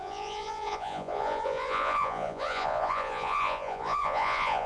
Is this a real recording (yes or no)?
no